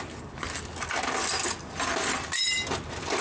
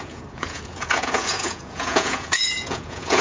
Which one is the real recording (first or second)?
first